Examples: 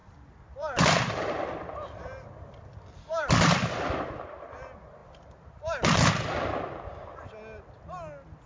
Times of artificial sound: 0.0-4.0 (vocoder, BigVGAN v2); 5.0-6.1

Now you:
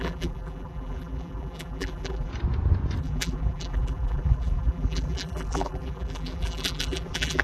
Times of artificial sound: 0.0-2.3 (vocoder, BigVGAN v2); 3.0-7.4

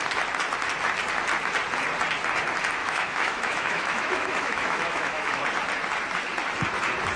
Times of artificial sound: 2.8-5.4 (autoencoder, DAC-VAE)